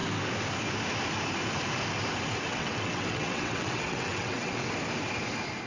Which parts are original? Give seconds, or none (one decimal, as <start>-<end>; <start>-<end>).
0.0-2.5; 4.7-5.7